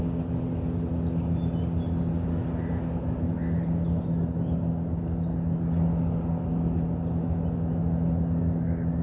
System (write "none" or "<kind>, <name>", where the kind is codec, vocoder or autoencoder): none